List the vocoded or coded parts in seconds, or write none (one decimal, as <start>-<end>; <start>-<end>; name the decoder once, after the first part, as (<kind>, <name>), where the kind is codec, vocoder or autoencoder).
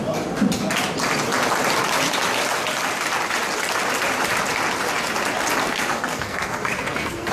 5.6-7.3 (codec, SNAC)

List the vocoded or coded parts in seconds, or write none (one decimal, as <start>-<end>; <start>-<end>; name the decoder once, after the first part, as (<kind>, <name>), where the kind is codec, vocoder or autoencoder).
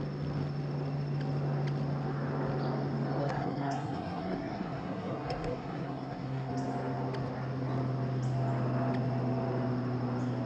3.2-6.5 (codec, SNAC)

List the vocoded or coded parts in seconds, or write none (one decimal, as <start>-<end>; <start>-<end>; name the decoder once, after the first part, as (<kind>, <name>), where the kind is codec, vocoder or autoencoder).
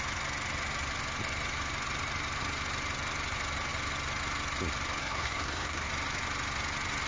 5.0-5.9 (codec, SNAC)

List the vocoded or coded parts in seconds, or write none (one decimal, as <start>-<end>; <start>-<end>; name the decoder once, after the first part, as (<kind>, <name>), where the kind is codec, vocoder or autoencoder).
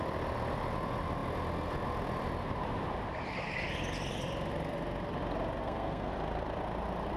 5.6-6.1 (codec, SNAC)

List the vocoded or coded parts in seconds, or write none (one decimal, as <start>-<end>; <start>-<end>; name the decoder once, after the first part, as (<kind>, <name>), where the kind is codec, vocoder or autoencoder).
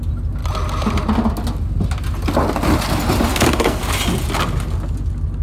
3.3-3.8 (codec, SNAC)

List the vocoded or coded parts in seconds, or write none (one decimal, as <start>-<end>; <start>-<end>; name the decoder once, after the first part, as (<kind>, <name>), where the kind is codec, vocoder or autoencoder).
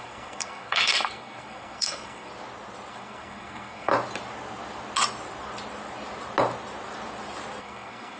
0.0-2.3 (codec, SNAC); 2.9-3.9; 7.6-8.2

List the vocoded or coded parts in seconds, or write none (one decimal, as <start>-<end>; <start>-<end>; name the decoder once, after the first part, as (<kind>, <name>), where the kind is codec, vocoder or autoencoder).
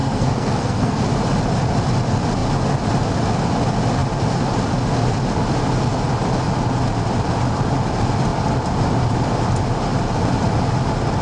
0.0-1.0 (codec, SNAC)